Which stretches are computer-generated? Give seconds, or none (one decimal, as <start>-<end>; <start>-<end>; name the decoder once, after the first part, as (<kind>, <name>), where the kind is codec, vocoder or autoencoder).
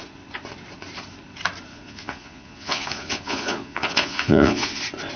1.7-4.8 (vocoder, Vocos)